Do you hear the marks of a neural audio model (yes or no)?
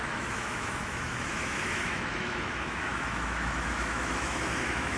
yes